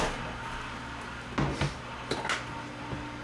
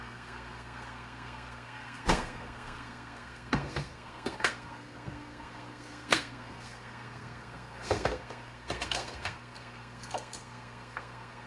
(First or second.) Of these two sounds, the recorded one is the first